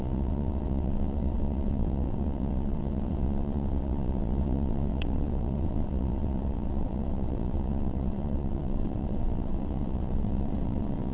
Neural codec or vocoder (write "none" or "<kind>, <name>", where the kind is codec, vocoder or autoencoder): vocoder, WaveNeXt